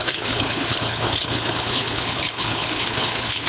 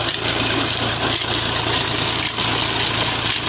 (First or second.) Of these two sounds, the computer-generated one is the first